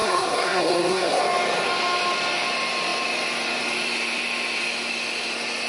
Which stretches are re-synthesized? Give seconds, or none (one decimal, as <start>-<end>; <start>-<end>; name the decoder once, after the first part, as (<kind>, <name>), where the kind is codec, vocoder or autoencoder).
0.0-1.2 (codec, SNAC)